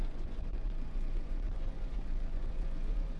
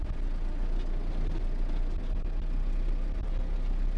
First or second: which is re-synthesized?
first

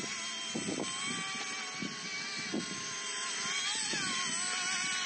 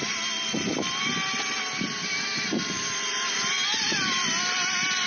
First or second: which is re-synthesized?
second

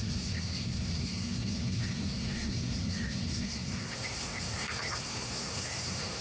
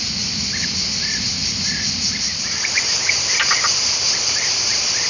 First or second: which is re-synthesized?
first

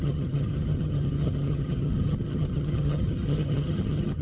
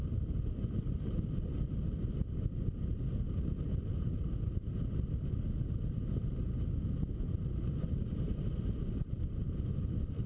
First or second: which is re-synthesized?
first